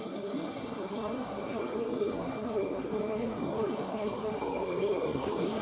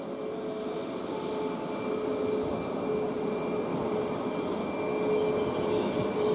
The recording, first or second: second